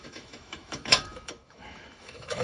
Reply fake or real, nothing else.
fake